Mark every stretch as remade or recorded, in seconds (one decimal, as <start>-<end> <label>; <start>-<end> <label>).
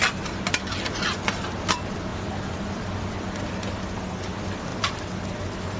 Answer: 0.0-2.1 recorded; 2.1-3.1 remade; 3.1-4.7 recorded; 4.7-5.8 remade